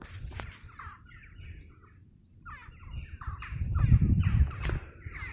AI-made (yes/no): no